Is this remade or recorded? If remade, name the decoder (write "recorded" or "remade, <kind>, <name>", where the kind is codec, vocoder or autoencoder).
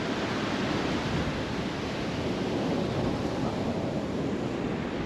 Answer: recorded